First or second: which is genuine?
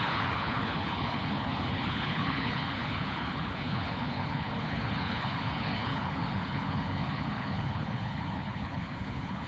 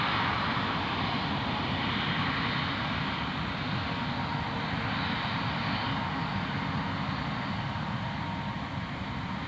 second